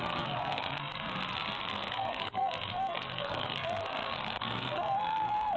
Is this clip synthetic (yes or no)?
yes